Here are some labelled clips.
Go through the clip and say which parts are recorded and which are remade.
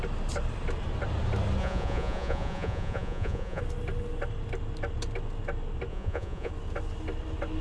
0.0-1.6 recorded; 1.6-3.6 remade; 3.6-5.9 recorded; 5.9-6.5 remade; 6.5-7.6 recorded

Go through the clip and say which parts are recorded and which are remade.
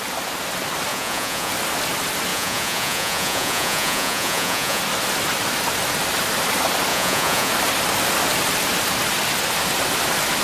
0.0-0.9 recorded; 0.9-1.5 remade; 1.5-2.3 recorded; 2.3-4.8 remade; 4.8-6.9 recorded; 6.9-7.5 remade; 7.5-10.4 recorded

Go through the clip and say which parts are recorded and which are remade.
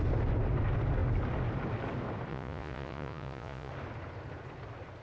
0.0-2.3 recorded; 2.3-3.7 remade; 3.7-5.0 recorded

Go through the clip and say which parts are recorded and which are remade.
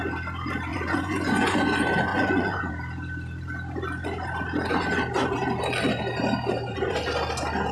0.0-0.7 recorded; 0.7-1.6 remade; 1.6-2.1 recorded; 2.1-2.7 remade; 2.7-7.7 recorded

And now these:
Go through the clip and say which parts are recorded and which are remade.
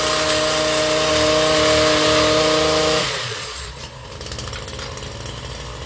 0.0-3.0 recorded; 3.0-4.1 remade; 4.1-5.9 recorded